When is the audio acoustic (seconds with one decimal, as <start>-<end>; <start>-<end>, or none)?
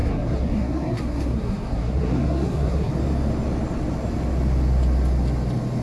2.9-5.8